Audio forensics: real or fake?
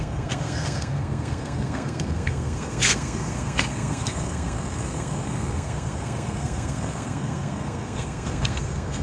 fake